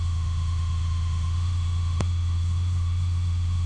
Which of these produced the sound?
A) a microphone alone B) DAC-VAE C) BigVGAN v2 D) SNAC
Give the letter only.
B